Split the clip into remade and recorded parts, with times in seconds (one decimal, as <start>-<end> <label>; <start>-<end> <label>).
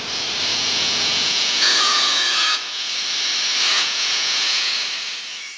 0.0-0.5 recorded; 0.5-2.9 remade; 2.9-3.7 recorded; 3.7-4.7 remade; 4.7-5.6 recorded